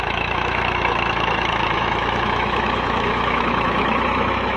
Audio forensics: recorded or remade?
remade